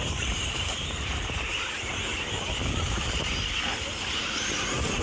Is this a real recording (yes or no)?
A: no